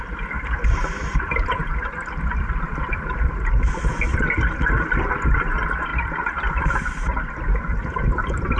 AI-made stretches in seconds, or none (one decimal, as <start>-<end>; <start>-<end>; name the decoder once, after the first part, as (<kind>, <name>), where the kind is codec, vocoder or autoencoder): 0.0-8.6 (vocoder, BigVGAN v2)